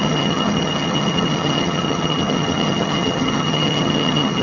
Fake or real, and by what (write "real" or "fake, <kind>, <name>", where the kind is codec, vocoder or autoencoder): fake, vocoder, HiFi-GAN